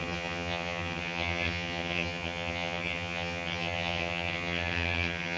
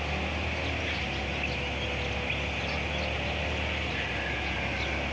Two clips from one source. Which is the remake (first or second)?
first